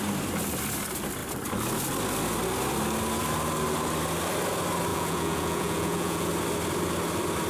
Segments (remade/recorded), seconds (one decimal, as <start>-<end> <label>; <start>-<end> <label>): 0.0-4.9 recorded; 4.9-6.3 remade; 6.3-7.5 recorded